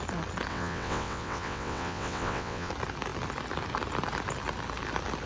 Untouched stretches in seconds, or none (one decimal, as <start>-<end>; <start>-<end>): 0.0-0.5; 2.7-5.3